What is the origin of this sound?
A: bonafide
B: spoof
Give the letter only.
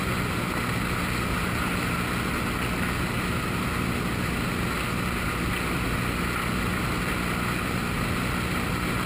A